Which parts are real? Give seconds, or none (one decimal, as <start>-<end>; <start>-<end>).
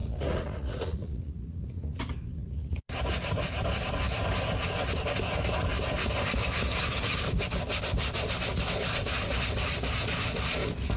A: 2.0-2.4; 3.0-11.0